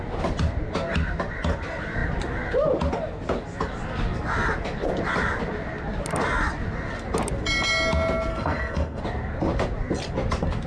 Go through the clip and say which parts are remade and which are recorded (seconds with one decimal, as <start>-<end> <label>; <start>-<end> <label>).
0.0-8.3 recorded; 8.3-9.0 remade; 9.0-10.7 recorded